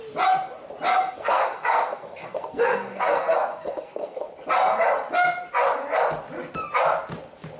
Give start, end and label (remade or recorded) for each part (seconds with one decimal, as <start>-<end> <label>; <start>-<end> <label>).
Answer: 0.0-0.9 recorded; 0.9-4.3 remade; 4.3-7.6 recorded